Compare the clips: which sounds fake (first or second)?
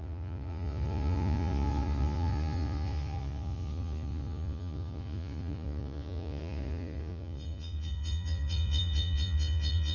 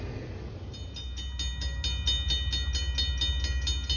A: first